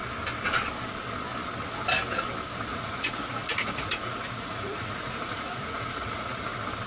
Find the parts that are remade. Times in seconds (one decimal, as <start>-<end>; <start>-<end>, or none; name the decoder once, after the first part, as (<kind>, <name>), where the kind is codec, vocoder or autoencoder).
2.7-6.5 (vocoder, Vocos)